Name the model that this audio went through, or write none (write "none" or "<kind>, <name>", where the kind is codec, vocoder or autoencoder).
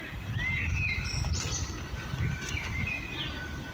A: none